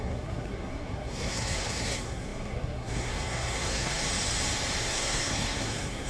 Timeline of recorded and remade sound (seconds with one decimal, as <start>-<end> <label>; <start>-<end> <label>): 0.0-4.0 remade; 4.0-4.8 recorded; 4.8-6.1 remade